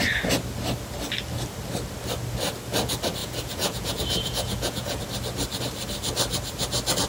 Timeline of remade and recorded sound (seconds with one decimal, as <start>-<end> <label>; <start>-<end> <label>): 0.0-3.2 recorded; 3.2-5.0 remade; 5.0-7.1 recorded